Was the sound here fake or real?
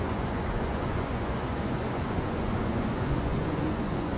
fake